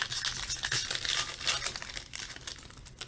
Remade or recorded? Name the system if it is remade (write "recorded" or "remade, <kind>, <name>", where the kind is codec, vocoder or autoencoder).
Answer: recorded